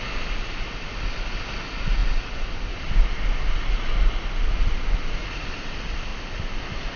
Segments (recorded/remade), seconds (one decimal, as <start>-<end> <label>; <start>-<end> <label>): 0.0-7.0 recorded

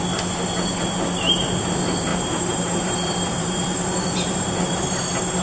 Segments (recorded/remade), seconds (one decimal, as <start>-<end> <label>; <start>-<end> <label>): 0.0-2.1 recorded; 2.1-4.8 remade; 4.8-5.4 recorded

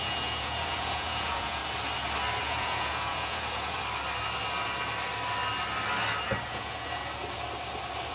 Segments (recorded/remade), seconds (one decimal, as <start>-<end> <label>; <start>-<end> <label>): 0.0-1.6 remade; 1.6-2.4 recorded; 2.4-3.8 remade; 3.8-6.5 recorded; 6.5-7.0 remade; 7.0-8.1 recorded